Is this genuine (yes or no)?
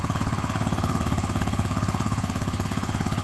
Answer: no